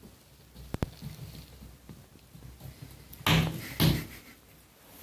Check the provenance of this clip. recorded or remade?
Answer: recorded